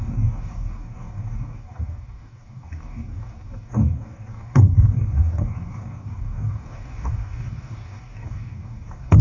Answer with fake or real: fake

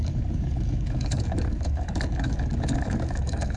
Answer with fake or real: fake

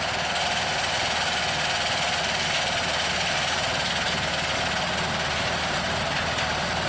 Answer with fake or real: real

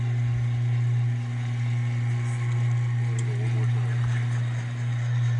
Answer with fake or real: real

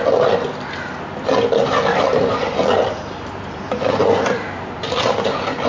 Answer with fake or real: real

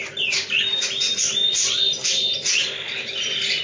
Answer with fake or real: real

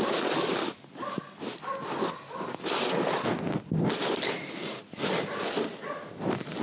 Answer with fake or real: real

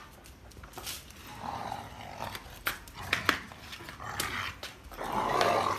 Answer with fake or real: real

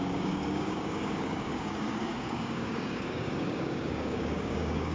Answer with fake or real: fake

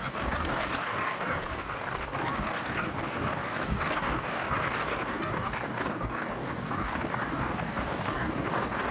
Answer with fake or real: fake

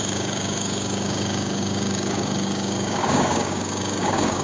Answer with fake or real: fake